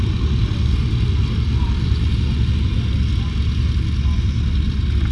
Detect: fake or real real